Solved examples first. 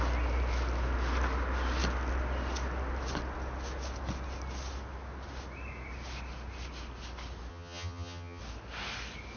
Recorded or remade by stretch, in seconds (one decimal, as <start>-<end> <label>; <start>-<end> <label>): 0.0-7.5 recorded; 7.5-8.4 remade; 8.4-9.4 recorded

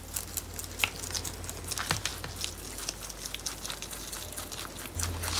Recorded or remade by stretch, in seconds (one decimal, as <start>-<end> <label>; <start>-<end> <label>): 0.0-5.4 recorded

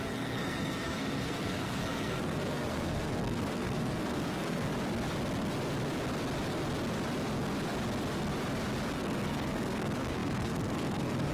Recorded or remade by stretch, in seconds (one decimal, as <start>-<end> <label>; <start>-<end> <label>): 0.0-4.7 remade; 4.7-8.9 recorded; 8.9-11.3 remade

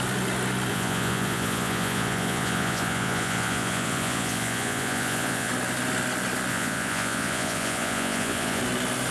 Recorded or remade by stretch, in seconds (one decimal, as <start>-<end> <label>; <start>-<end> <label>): 0.0-0.7 recorded; 0.7-5.5 remade; 5.5-6.5 recorded; 6.5-8.6 remade; 8.6-9.1 recorded

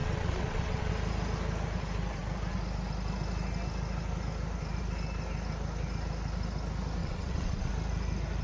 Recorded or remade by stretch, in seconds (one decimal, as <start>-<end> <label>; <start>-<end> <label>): 0.0-0.9 remade; 0.9-7.0 recorded; 7.0-7.7 remade; 7.7-8.4 recorded

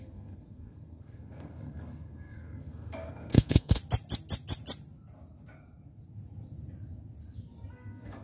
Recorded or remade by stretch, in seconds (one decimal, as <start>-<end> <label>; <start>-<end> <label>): 0.0-3.8 remade; 3.8-7.7 recorded; 7.7-8.2 remade

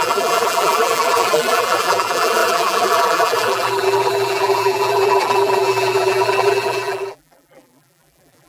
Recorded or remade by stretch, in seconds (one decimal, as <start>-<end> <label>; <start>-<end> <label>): 0.0-8.5 remade